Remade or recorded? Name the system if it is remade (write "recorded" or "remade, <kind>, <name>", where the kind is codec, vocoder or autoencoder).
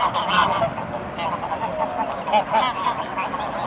recorded